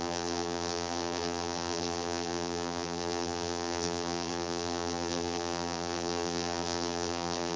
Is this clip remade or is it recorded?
remade